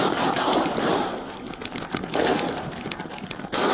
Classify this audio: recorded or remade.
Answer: recorded